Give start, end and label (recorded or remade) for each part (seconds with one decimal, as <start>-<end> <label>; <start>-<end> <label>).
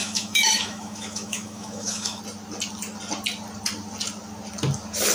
0.0-2.2 remade; 2.2-5.1 recorded